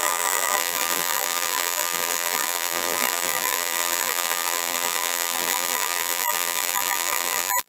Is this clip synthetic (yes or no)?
yes